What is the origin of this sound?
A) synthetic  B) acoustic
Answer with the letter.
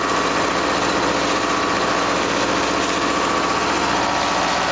B